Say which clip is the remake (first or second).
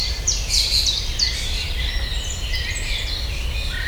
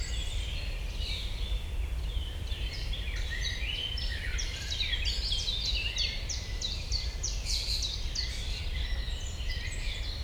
second